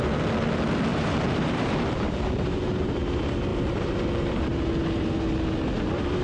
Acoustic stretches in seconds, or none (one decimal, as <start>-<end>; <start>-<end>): 0.0-0.9; 2.9-3.5; 4.7-6.2